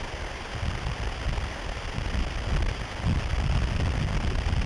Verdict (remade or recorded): recorded